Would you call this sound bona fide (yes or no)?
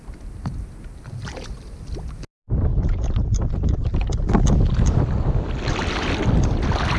yes